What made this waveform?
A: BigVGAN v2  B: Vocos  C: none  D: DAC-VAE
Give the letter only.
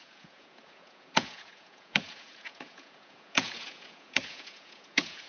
B